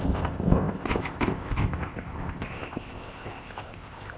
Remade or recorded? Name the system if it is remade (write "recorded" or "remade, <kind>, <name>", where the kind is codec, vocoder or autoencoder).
remade, codec, ZipCodec